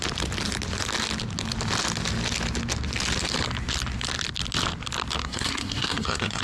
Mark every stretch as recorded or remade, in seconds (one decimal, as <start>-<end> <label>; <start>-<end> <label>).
0.0-5.2 recorded; 5.2-6.4 remade